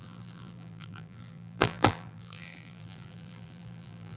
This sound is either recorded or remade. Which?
remade